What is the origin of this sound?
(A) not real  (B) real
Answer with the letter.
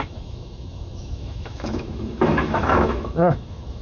A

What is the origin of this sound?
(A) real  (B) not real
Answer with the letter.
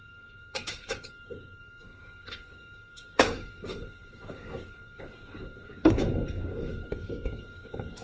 B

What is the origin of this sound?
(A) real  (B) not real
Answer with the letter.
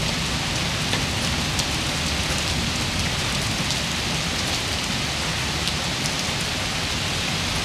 A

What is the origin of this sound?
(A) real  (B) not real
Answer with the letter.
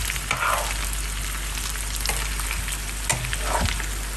A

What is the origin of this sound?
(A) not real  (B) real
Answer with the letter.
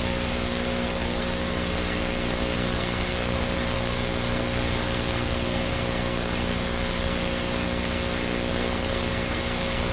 A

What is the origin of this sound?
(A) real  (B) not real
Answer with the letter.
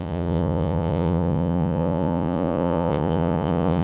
B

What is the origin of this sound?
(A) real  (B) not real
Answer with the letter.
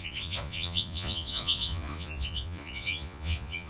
B